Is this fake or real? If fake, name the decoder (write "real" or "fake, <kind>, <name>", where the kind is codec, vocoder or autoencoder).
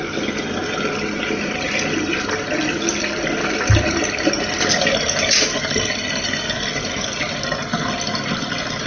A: real